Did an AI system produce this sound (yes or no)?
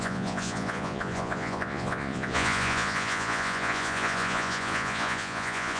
yes